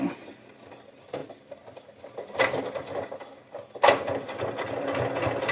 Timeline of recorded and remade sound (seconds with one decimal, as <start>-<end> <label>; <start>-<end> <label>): 0.0-5.5 recorded